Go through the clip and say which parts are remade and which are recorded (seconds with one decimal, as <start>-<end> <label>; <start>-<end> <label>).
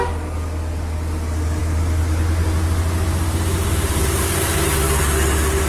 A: 0.0-5.7 recorded